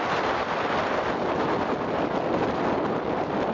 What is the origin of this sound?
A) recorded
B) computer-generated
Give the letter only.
A